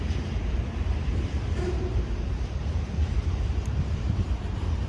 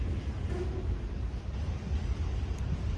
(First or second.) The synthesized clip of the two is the first